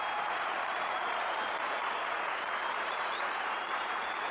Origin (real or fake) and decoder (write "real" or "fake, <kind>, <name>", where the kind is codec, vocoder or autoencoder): fake, vocoder, Vocos